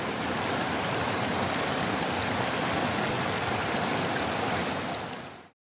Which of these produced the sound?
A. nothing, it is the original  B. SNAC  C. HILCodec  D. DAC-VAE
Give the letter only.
A